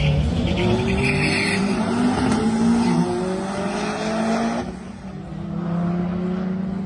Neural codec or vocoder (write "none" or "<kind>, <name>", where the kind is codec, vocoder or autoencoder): none